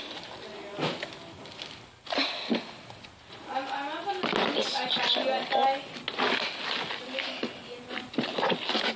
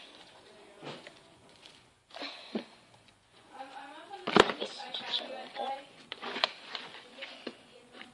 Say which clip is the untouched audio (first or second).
first